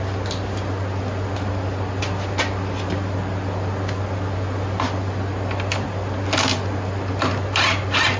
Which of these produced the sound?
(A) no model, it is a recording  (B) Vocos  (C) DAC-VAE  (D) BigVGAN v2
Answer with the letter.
A